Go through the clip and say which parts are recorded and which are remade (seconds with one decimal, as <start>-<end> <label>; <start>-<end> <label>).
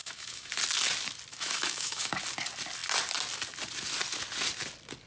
0.0-0.5 remade; 0.5-1.3 recorded; 1.3-2.1 remade; 2.1-5.1 recorded